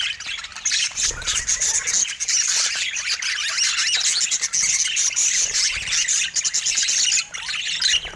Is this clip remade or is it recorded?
recorded